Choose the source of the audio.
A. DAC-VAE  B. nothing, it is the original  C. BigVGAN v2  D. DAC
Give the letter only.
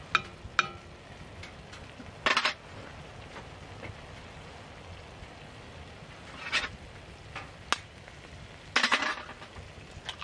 B